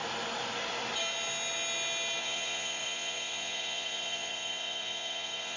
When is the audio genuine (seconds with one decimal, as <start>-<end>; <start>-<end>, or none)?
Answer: 0.0-2.2